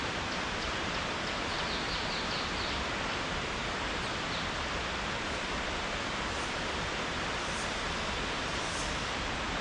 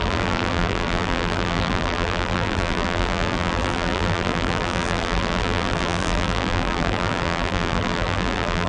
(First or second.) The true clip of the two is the first